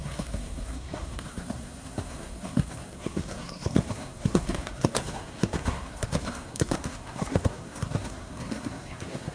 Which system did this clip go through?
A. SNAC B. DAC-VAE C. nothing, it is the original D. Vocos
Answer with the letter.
A